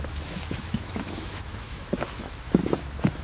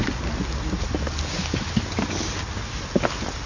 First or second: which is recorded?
second